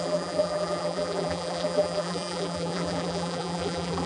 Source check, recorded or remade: remade